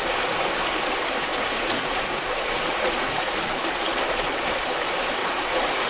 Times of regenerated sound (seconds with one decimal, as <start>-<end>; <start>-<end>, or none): 1.3-3.6; 5.2-5.9